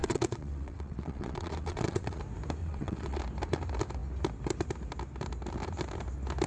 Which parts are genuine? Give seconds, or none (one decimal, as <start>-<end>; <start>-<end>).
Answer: 2.2-2.6; 3.2-6.5

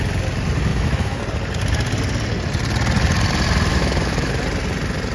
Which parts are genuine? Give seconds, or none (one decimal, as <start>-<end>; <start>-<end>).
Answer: 0.0-0.7; 1.2-3.7; 4.3-5.1

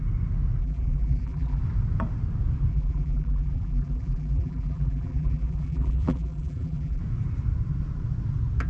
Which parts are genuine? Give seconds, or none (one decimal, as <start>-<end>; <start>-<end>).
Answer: 0.0-0.6; 1.6-2.7; 7.0-8.7